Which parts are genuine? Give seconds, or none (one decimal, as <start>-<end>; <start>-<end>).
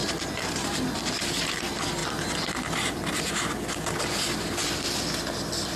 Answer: 0.0-4.6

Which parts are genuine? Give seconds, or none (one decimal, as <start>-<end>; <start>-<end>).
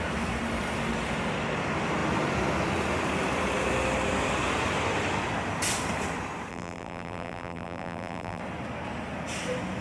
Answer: 0.0-6.5; 8.4-9.8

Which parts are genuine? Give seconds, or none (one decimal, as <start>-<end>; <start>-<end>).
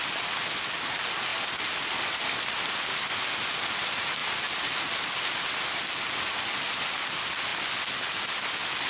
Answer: 0.0-8.9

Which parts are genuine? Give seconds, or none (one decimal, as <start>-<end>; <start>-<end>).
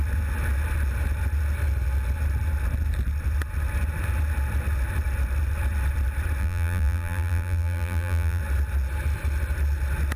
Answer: 0.0-6.4; 8.4-10.2